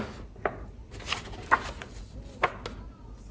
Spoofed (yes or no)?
no